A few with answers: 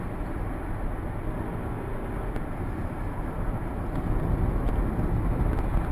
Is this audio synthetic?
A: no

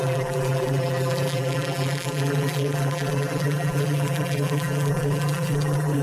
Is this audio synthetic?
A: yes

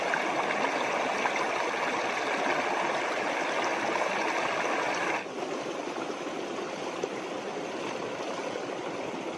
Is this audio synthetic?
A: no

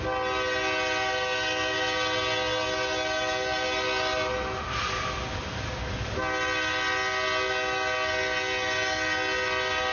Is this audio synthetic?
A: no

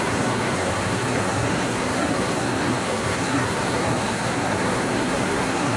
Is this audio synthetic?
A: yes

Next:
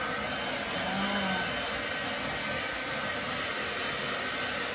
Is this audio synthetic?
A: no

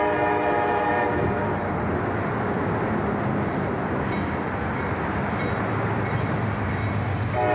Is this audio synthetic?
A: no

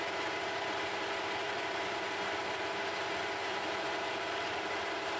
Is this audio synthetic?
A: yes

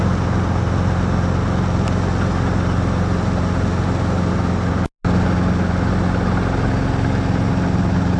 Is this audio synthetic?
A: no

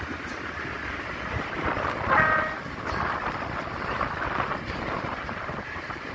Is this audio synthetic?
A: no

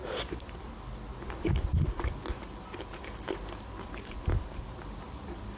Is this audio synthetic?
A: no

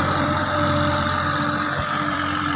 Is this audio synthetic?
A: yes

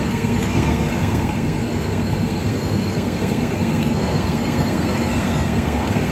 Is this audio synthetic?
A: yes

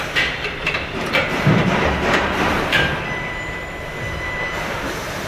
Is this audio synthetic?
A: yes